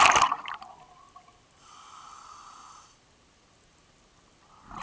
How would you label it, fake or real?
real